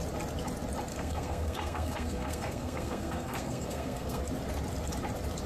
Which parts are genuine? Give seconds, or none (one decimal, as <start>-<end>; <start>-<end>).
0.0-0.9; 4.2-5.5